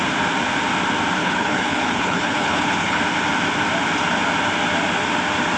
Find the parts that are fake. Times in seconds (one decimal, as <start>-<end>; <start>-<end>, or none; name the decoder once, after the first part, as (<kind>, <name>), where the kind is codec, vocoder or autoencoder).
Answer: 1.2-3.0 (codec, HILCodec)